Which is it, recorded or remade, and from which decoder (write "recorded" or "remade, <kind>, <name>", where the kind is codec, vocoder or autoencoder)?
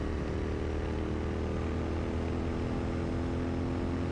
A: recorded